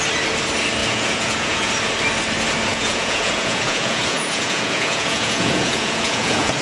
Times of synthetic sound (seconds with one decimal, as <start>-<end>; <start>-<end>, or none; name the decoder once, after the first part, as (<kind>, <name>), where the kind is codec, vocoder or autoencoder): 0.8-1.7 (vocoder, Vocos); 2.7-6.6